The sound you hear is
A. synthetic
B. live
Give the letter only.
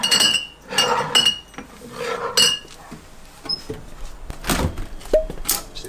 B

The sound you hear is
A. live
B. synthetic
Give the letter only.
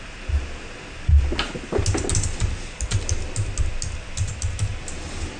A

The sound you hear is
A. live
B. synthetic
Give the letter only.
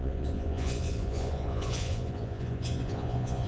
B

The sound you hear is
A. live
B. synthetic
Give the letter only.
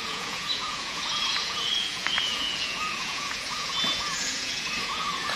B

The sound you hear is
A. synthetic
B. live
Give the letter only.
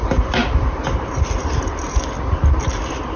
B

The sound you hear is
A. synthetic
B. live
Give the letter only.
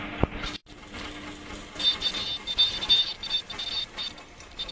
B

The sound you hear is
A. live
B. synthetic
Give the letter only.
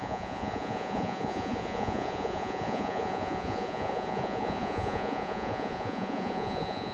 B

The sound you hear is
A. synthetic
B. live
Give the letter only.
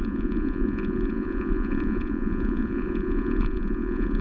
A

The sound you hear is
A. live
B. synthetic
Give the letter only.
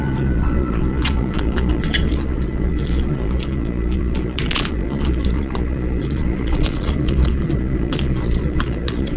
B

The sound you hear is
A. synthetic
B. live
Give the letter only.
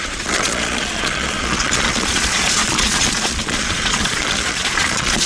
A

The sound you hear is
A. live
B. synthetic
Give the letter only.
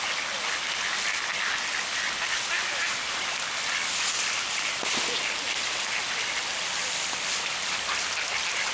A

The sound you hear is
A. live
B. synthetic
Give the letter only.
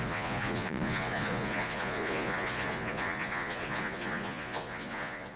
B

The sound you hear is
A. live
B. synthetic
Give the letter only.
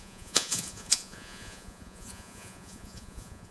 B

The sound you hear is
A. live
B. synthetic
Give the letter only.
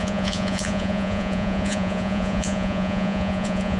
B